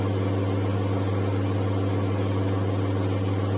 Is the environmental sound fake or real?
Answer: real